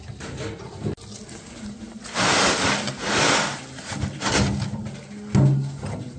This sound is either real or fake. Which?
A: real